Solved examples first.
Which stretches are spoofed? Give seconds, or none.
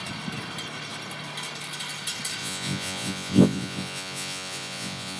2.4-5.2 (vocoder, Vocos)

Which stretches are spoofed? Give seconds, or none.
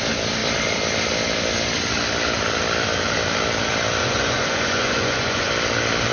4.0-5.5 (vocoder, Vocos)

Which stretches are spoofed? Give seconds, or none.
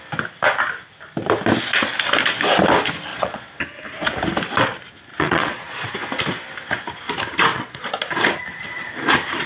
3.1-3.6 (vocoder, Vocos); 5.1-5.9; 7.5-8.1